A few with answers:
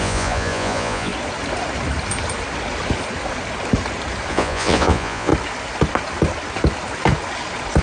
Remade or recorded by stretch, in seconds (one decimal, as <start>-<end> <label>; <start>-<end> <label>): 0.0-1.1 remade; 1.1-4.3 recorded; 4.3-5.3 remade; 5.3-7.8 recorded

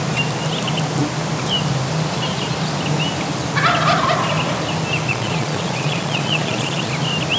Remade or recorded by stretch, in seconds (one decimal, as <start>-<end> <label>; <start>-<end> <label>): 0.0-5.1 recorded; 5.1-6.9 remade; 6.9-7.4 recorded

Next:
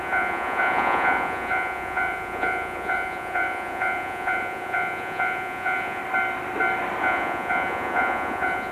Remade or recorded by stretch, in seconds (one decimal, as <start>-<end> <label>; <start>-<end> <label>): 0.0-6.0 remade; 6.0-7.0 recorded; 7.0-8.7 remade

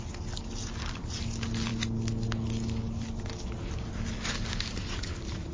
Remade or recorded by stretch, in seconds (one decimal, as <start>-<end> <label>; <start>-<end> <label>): 0.0-5.5 recorded

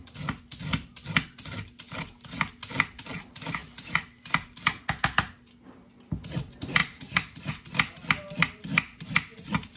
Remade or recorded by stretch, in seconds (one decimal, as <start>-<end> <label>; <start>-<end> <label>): 0.0-6.8 recorded; 6.8-7.5 remade; 7.5-9.8 recorded